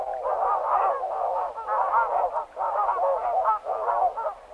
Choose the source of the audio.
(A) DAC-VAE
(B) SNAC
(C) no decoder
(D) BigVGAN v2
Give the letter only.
C